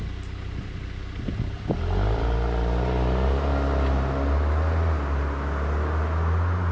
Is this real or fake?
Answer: real